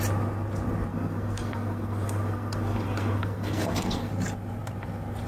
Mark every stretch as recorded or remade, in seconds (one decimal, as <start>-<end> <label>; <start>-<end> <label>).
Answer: 0.0-0.9 recorded; 0.9-4.1 remade; 4.1-5.3 recorded